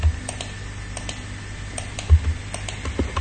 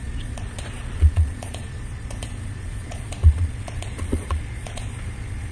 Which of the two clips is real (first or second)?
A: first